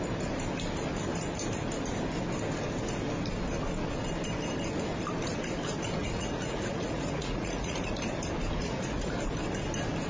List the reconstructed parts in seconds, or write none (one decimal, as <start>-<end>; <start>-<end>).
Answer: 6.0-7.9; 8.6-9.2